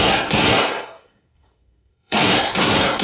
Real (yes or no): no